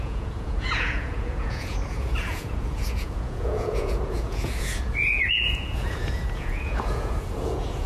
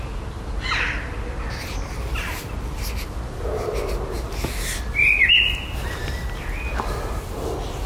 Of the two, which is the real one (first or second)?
second